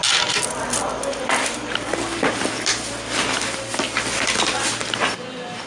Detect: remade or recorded recorded